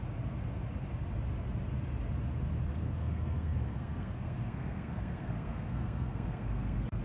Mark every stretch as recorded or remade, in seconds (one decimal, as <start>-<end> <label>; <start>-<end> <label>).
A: 0.0-2.7 recorded; 2.7-7.0 remade